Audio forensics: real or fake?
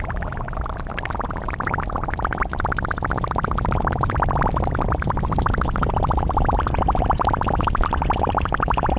real